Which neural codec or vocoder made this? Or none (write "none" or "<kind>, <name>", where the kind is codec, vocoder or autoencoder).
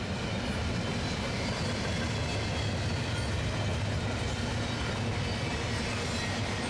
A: none